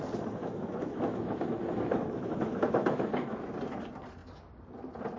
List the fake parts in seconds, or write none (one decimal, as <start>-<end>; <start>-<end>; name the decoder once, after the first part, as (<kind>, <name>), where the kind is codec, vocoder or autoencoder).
0.4-3.5 (autoencoder, DAC-VAE)